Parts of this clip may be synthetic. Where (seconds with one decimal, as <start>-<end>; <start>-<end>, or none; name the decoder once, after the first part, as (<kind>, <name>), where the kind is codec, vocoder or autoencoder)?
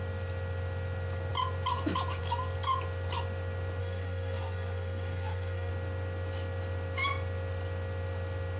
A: 3.8-5.7 (codec, SNAC)